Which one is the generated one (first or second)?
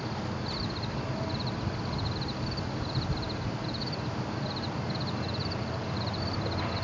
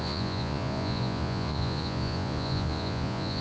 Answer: second